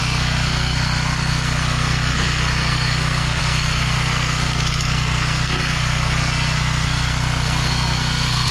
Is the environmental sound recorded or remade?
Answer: remade